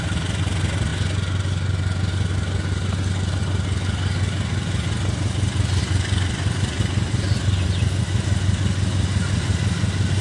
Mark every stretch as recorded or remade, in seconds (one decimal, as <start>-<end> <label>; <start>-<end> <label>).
0.0-5.8 recorded; 5.8-8.0 remade; 8.0-10.2 recorded